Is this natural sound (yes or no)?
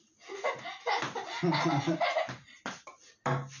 yes